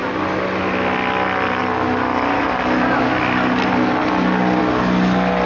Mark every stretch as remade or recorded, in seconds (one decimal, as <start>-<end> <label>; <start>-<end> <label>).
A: 0.0-5.5 recorded